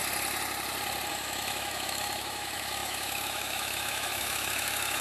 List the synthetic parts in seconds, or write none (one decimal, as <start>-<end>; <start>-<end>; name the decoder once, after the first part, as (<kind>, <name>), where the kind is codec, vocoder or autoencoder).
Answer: 1.1-5.0 (autoencoder, DAC-VAE)